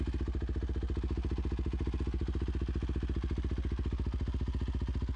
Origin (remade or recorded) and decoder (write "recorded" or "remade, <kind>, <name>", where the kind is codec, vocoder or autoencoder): recorded